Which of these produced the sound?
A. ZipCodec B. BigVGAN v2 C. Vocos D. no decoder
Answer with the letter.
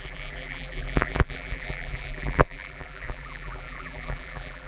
B